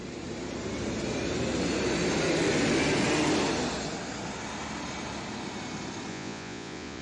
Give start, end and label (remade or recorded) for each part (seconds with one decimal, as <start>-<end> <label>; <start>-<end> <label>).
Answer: 0.0-6.1 recorded; 6.1-7.0 remade